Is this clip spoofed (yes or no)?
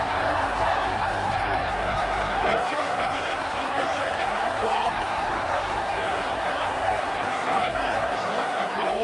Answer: yes